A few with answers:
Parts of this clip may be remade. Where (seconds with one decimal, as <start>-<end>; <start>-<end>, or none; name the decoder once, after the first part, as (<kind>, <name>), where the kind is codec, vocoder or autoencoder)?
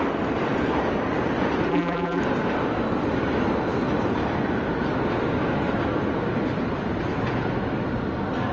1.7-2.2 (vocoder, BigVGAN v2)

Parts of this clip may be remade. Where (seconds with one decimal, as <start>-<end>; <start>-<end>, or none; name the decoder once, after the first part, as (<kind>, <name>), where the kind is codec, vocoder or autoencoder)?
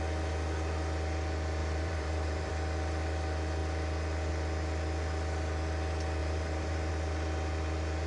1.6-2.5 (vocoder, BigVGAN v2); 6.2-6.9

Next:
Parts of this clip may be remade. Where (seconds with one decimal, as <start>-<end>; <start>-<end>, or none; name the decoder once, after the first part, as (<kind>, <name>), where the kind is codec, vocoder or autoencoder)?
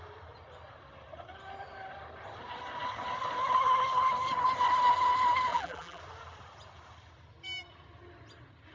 5.5-6.0 (vocoder, BigVGAN v2)